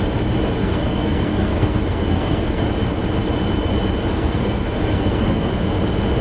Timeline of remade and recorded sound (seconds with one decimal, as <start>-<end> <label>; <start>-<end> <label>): 0.0-0.6 recorded; 0.6-2.6 remade; 2.6-4.1 recorded; 4.1-5.5 remade; 5.5-6.2 recorded